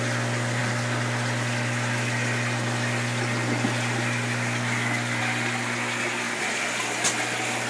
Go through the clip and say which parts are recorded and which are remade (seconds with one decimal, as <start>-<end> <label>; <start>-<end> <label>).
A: 0.0-7.7 recorded